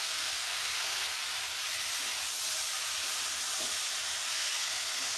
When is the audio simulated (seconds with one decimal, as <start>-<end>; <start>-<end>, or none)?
0.0-1.2; 4.3-5.2